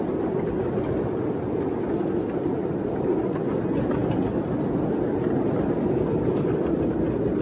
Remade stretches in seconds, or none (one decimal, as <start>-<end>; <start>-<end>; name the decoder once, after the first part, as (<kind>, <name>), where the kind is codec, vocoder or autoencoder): none